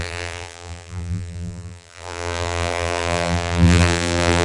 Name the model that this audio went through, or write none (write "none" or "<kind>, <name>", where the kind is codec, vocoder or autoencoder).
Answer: vocoder, BigVGAN v2